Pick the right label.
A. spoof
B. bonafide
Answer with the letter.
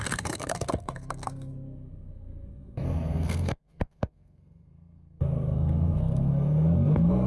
A